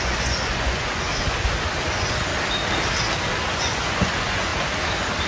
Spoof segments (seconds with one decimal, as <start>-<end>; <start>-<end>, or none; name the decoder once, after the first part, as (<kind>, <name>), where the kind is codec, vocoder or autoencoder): 0.0-1.1 (vocoder, Vocos); 1.9-2.3; 3.5-4.5

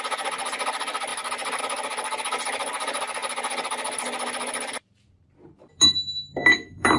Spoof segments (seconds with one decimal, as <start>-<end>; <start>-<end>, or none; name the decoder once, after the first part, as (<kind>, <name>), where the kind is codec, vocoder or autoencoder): none

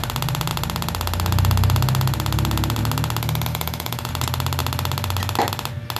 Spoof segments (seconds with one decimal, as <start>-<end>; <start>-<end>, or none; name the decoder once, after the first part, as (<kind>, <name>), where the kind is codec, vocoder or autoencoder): 3.5-4.1 (autoencoder, DAC-VAE)

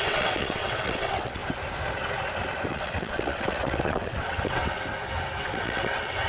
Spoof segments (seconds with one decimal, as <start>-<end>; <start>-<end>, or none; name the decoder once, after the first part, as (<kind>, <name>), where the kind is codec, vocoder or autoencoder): 0.0-1.4 (vocoder, WaveNeXt); 2.7-4.6; 5.4-6.3

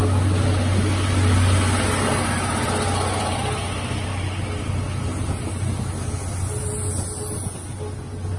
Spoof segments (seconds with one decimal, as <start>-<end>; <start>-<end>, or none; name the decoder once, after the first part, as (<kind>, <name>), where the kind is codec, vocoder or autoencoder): none

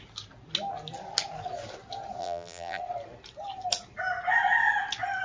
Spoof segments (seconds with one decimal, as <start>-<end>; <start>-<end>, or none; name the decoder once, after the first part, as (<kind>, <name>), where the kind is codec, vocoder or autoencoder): 2.2-2.8 (vocoder, BigVGAN v2)

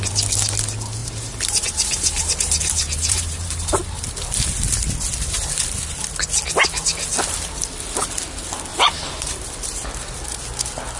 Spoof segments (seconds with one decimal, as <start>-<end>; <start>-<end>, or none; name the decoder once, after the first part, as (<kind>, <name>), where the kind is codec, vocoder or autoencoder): 1.0-3.8 (vocoder, BigVGAN v2); 8.7-9.4

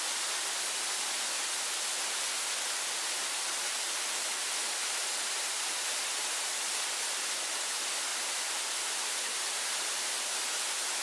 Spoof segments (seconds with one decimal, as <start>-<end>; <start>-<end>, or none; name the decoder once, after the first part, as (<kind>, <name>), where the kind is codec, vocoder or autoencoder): none